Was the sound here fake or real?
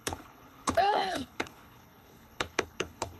fake